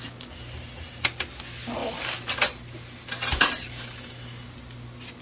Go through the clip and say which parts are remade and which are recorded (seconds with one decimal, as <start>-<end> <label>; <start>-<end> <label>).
0.0-5.2 recorded